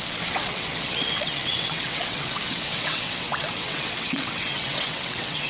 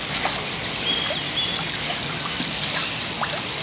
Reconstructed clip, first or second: first